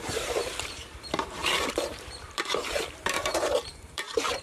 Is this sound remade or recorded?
remade